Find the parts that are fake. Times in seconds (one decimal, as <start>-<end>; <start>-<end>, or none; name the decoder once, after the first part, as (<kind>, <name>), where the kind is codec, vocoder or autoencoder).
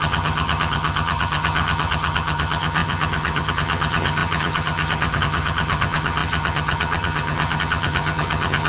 0.0-8.7 (vocoder, HiFi-GAN)